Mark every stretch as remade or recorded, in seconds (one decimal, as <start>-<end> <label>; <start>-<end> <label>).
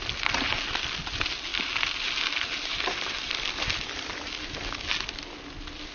0.0-1.5 recorded; 1.5-4.7 remade; 4.7-5.9 recorded